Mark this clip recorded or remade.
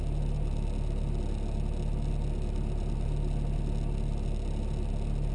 recorded